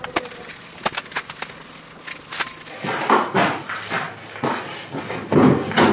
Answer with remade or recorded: recorded